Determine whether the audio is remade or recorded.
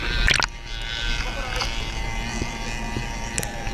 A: recorded